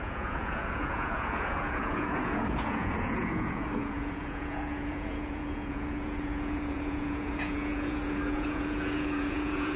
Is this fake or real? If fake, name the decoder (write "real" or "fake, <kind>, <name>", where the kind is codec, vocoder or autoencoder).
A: fake, vocoder, Vocos